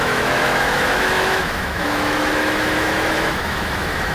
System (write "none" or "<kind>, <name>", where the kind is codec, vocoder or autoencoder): autoencoder, DAC-VAE